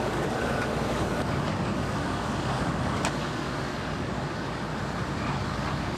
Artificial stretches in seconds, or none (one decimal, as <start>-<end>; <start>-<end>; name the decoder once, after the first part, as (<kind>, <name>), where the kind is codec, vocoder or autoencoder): 0.0-4.7 (codec, DAC); 5.3-6.0